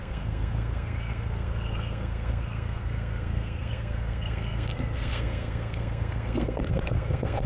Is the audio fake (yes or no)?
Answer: yes